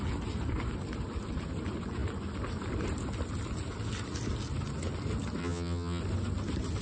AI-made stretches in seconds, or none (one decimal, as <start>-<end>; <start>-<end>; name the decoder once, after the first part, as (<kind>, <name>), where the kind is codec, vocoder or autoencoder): 5.4-6.0 (vocoder, HiFi-GAN)